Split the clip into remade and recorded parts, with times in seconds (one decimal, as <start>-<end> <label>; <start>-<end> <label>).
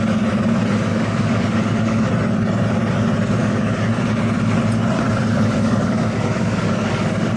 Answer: 0.0-0.9 recorded; 0.9-2.1 remade; 2.1-3.4 recorded; 3.4-3.9 remade; 3.9-5.3 recorded; 5.3-7.4 remade